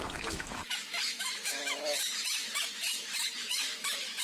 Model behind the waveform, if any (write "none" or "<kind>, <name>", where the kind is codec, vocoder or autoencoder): autoencoder, DAC-VAE